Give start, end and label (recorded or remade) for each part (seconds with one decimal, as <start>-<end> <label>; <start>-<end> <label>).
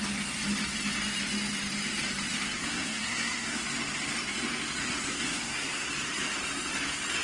0.0-2.6 recorded; 2.6-3.6 remade; 3.6-5.1 recorded; 5.1-5.9 remade; 5.9-7.2 recorded